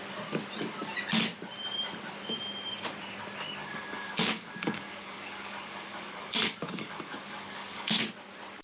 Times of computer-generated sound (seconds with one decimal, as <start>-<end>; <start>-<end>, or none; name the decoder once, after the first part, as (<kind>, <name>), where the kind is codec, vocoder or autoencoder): 3.6-8.0 (codec, DAC)